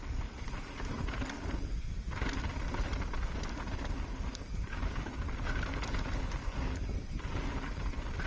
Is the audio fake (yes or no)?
no